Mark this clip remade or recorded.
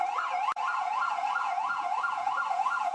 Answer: remade